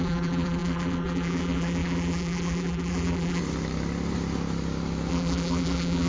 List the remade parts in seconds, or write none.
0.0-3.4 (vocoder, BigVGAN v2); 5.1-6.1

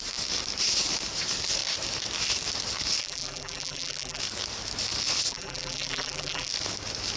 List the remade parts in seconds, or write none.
3.0-4.2 (vocoder, BigVGAN v2); 5.3-6.5

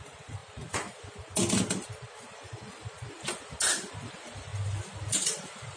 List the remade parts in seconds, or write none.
0.0-0.4 (vocoder, BigVGAN v2); 3.9-4.5; 5.1-5.8

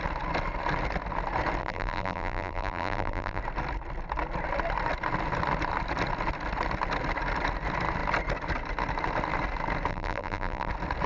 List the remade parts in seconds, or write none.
1.6-3.4 (vocoder, BigVGAN v2); 9.9-10.7

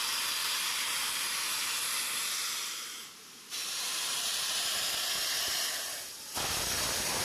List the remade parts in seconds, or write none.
0.4-4.5 (vocoder, BigVGAN v2)

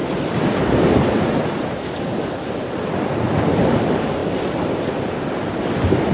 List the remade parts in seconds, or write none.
0.0-3.7 (vocoder, BigVGAN v2); 4.2-4.9